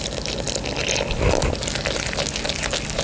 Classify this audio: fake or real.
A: real